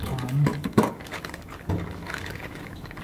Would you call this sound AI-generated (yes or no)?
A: yes